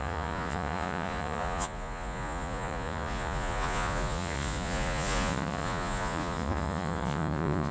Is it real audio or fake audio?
fake